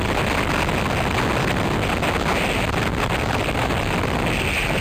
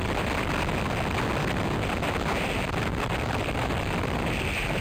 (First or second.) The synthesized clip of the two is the second